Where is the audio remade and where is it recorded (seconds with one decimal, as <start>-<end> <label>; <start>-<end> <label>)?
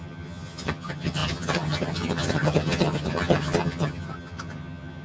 0.0-5.0 remade